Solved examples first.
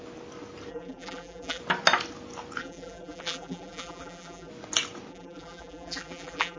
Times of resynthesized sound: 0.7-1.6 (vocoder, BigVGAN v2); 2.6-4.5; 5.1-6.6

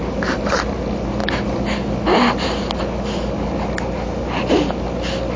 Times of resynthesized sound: none

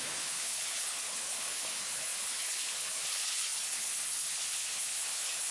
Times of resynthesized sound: 0.0-5.5 (codec, HILCodec)

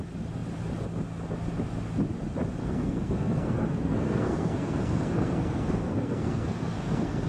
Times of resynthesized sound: 2.6-7.3 (codec, SNAC)